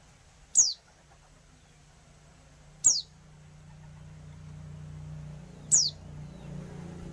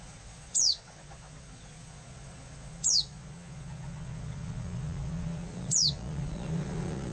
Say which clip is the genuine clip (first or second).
first